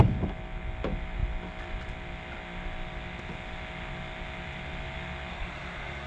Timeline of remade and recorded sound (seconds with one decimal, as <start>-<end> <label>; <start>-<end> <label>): 0.0-5.3 recorded; 5.3-6.1 remade